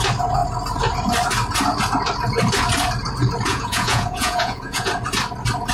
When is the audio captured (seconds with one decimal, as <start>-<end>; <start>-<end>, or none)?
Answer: 0.0-3.5; 4.9-5.7